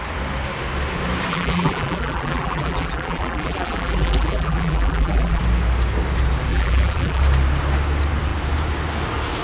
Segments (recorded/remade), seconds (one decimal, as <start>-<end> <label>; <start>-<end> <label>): 0.0-1.3 recorded; 1.3-5.4 remade; 5.4-6.5 recorded; 6.5-7.2 remade; 7.2-9.4 recorded